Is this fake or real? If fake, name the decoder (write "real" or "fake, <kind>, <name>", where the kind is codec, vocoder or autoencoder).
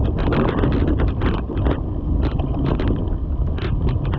real